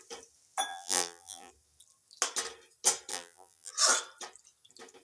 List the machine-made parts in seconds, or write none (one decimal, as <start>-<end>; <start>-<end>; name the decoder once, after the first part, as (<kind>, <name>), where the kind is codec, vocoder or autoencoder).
0.7-1.5 (vocoder, BigVGAN v2); 3.1-3.7